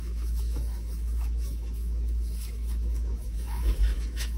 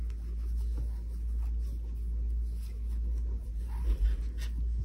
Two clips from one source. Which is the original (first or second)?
second